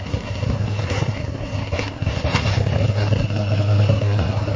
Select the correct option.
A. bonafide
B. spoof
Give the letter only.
B